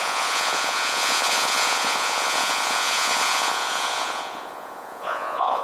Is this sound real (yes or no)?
no